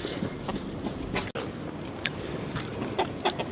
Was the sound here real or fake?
real